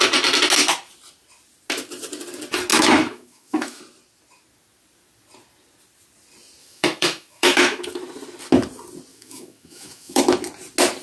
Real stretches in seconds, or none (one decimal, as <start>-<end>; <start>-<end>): 0.0-2.7; 3.8-6.6; 7.8-9.1; 10.2-11.0